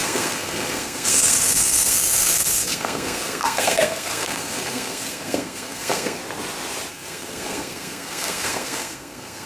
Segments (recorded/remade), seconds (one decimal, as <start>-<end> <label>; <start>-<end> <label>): 0.0-6.2 remade; 6.2-6.9 recorded; 6.9-9.5 remade